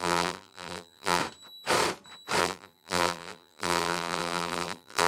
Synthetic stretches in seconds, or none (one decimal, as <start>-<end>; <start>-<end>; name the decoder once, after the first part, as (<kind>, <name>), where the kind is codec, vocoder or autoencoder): 0.0-1.2 (vocoder, BigVGAN v2); 2.4-5.1